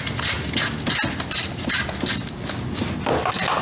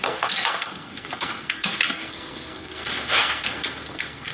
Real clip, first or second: first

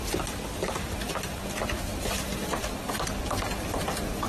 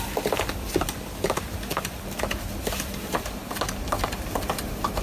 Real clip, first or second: second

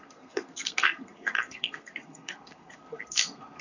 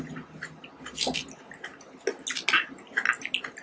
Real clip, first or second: second